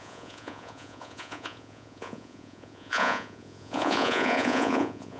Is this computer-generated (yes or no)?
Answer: yes